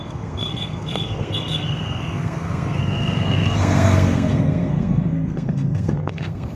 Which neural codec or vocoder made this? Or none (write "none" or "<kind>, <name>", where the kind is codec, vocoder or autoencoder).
codec, SNAC